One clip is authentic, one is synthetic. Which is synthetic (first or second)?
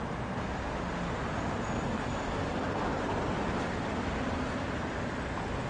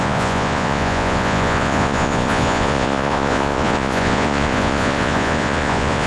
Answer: second